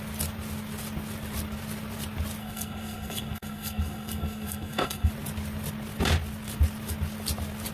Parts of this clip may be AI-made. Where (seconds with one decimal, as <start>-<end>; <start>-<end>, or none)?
2.4-5.1

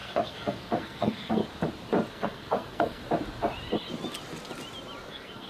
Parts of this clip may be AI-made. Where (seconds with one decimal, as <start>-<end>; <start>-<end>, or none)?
0.0-1.4; 2.1-3.0; 5.1-5.5

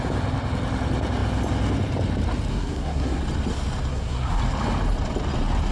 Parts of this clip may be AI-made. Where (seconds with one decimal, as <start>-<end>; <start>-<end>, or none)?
2.5-3.2; 3.9-4.4

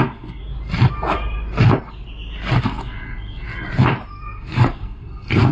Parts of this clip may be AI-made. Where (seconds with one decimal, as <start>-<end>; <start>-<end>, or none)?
0.0-0.4; 2.6-3.5; 4.1-5.5

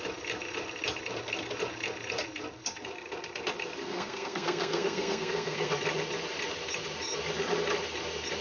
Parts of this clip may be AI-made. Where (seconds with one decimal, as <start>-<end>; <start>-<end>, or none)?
3.8-5.7

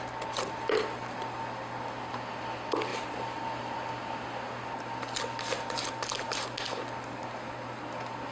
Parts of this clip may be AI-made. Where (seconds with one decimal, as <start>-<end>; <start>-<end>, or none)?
none